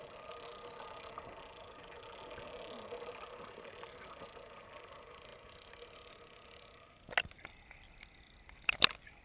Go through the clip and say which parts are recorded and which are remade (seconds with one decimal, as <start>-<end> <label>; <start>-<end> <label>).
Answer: 0.0-9.2 recorded